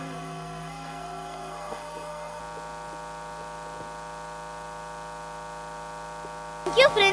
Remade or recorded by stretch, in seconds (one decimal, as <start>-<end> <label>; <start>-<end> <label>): 0.0-2.4 remade; 2.4-7.1 recorded